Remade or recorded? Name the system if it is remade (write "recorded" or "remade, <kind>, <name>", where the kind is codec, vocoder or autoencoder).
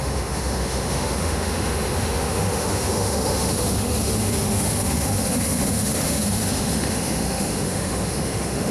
remade, autoencoder, DAC-VAE